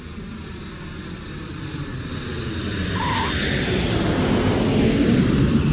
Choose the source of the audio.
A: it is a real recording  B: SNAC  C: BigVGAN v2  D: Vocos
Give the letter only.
A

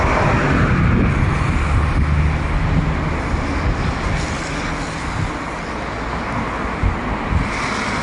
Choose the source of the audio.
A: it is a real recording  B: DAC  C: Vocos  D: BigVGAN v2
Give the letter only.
A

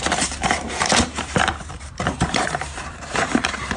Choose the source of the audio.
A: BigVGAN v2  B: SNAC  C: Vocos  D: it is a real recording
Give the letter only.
A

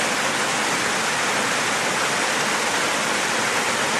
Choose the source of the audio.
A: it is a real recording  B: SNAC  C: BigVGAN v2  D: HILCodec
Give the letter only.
A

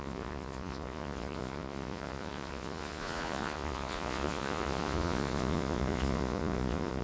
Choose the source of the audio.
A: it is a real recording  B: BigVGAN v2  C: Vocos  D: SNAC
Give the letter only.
C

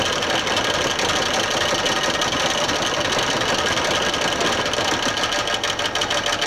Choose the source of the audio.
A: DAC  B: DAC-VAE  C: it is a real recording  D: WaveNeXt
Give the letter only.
C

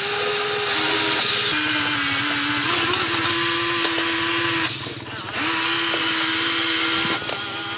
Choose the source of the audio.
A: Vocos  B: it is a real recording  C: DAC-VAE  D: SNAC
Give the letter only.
B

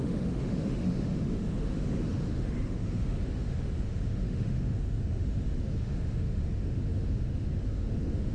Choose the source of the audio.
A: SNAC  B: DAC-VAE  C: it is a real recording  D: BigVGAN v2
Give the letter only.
B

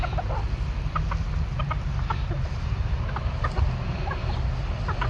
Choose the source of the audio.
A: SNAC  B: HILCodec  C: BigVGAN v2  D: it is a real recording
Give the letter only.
D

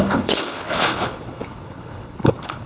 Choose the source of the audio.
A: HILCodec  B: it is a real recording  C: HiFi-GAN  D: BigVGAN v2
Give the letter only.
A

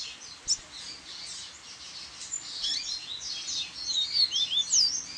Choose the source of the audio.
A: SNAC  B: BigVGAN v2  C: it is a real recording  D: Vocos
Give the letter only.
C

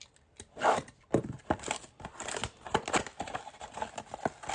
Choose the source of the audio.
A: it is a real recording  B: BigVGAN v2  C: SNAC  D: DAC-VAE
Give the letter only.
A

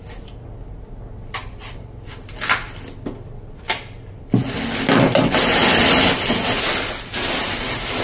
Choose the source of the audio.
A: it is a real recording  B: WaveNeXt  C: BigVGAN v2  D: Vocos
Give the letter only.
A